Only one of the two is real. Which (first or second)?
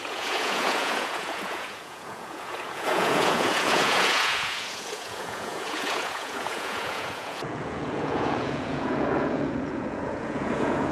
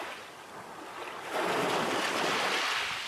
second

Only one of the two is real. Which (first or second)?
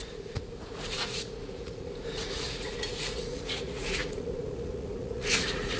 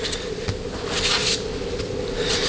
second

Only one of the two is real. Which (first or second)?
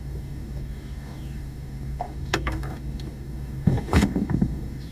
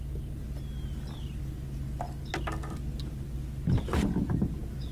second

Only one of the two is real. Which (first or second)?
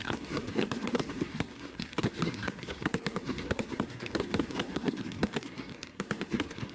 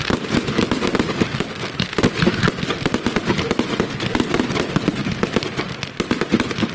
second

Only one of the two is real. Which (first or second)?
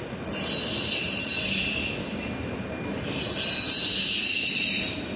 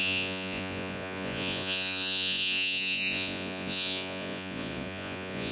first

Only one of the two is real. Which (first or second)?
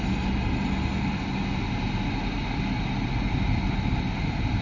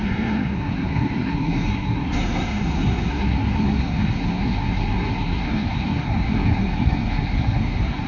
first